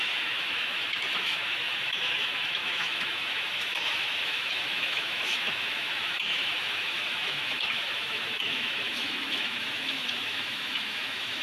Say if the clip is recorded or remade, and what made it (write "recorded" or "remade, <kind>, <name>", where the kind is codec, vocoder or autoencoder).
remade, autoencoder, DAC-VAE